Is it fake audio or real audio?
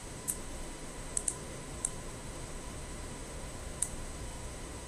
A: fake